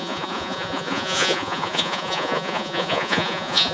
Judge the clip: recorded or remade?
remade